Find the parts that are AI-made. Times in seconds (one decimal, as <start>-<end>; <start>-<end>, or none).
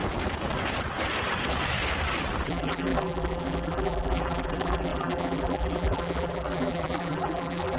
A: 2.5-7.8